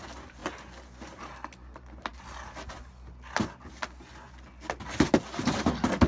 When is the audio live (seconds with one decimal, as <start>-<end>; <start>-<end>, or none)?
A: 0.0-6.1